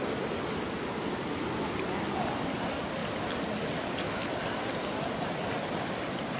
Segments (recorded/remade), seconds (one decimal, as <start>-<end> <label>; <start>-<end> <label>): 0.0-6.4 recorded